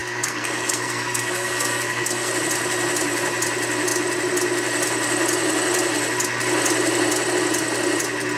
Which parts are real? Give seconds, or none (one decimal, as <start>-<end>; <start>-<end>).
2.3-8.4